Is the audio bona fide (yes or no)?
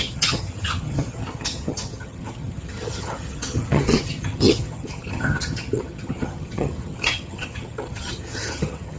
no